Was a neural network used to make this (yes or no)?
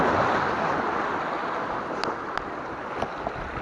no